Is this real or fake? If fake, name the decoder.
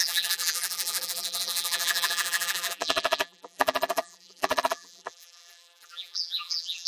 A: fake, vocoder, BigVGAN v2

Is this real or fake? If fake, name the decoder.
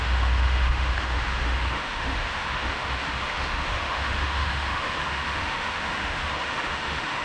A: fake, autoencoder, DAC-VAE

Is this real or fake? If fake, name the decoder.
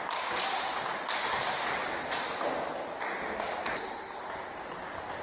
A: real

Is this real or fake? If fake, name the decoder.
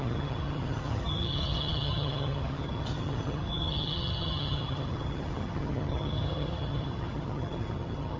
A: fake, vocoder, HiFi-GAN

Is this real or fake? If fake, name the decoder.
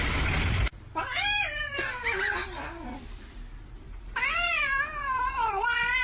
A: real